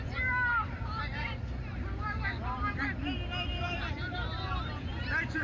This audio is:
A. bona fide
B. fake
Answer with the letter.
B